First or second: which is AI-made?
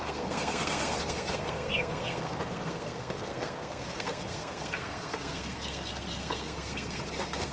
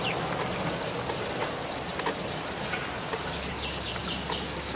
first